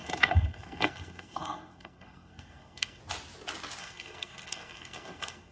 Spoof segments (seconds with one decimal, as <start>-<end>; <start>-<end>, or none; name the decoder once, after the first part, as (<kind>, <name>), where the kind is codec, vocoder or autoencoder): 0.0-3.0 (codec, SNAC); 3.8-5.5